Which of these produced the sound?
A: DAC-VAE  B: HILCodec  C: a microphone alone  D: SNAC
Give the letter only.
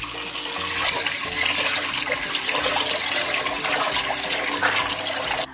C